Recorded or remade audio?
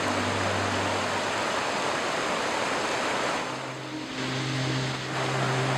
remade